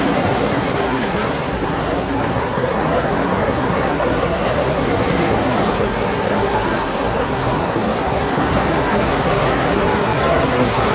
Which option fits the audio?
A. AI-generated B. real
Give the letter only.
A